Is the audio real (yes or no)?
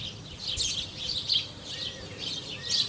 yes